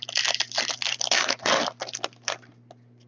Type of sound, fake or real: real